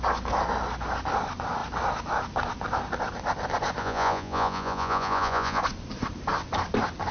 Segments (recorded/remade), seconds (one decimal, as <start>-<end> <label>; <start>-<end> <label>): 0.0-3.8 recorded; 3.8-5.6 remade; 5.6-7.1 recorded